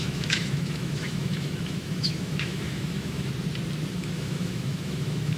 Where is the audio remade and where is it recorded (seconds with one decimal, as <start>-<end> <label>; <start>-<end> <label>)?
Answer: 0.0-3.3 remade; 3.3-3.9 recorded; 3.9-5.4 remade